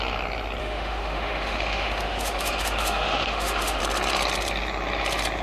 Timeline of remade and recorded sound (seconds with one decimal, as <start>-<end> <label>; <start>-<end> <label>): 0.0-0.6 recorded; 0.6-3.8 remade; 3.8-5.4 recorded